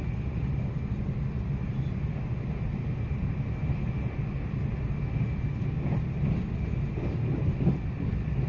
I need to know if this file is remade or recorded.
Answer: recorded